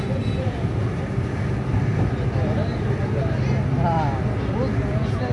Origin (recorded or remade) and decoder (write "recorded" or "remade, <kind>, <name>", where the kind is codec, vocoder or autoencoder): recorded